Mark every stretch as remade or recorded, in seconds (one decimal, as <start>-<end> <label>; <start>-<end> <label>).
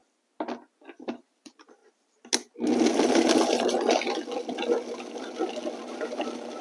0.0-1.2 recorded; 1.2-1.8 remade; 1.8-5.8 recorded; 5.8-6.6 remade